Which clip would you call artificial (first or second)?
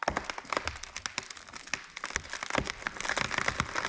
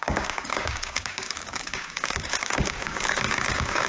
second